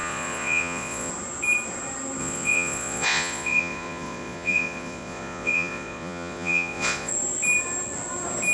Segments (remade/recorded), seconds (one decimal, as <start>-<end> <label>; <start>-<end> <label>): 0.0-1.1 remade; 1.1-2.2 recorded; 2.2-7.1 remade; 7.1-8.5 recorded